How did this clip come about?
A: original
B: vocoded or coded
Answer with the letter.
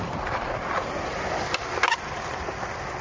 A